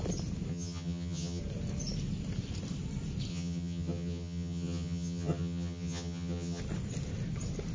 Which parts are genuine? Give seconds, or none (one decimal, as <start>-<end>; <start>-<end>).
0.0-0.5; 1.4-3.3; 6.6-7.7